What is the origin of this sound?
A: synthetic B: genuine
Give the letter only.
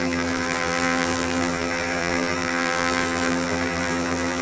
A